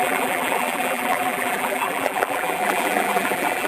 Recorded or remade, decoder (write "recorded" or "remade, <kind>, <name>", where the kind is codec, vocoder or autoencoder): remade, vocoder, BigVGAN v2